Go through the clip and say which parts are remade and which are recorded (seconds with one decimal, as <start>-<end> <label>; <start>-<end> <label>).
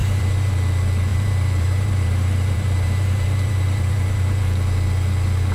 0.0-0.5 remade; 0.5-1.1 recorded; 1.1-4.4 remade; 4.4-5.5 recorded